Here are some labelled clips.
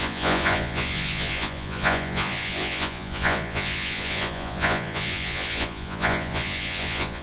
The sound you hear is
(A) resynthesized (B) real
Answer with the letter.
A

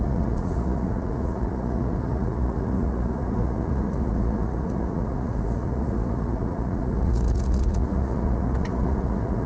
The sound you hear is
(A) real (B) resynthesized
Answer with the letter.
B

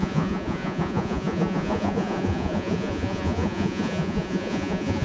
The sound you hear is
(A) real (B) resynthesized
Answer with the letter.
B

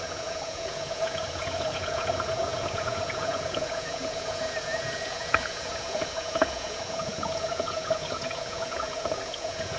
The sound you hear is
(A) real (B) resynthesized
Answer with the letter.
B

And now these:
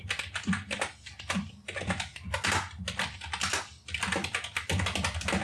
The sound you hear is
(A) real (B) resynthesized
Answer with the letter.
A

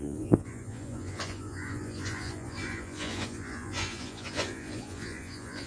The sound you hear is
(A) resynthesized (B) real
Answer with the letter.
A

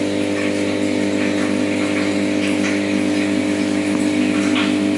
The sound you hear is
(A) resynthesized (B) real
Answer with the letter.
B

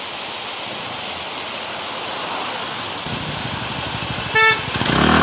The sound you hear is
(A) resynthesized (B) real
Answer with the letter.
B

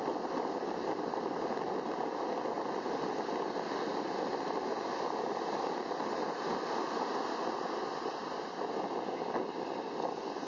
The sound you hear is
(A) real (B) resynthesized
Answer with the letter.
A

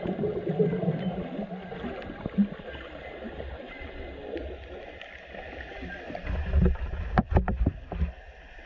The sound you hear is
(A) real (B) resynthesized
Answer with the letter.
A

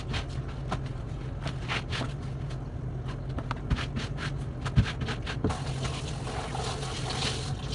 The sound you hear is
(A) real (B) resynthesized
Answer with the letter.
A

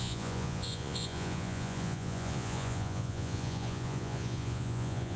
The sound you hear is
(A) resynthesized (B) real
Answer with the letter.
A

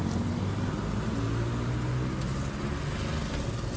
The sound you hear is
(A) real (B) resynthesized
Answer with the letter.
A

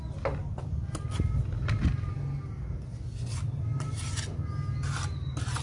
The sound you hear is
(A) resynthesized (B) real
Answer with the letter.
B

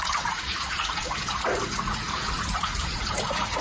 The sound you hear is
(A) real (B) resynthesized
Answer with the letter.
B